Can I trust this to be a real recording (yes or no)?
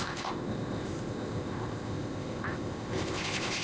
no